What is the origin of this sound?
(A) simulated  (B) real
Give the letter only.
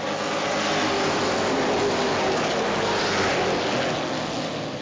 B